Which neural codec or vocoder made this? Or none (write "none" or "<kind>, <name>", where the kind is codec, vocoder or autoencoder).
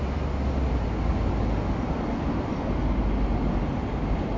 none